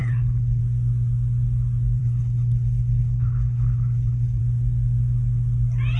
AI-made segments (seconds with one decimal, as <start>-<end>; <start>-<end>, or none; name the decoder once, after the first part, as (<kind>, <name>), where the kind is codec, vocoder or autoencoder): 0.0-0.6 (codec, HILCodec); 2.0-4.4